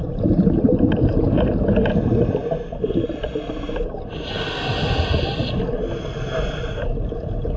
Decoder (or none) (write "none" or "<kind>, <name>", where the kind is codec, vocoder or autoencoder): none